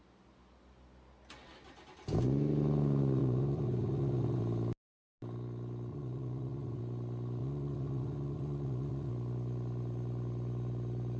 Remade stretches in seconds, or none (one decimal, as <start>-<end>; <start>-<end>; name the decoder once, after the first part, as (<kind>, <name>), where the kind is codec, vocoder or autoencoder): 3.2-4.4 (vocoder, Vocos); 5.9-6.8; 7.4-9.1